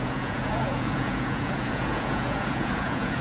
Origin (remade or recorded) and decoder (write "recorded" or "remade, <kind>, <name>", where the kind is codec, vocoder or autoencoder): remade, vocoder, Vocos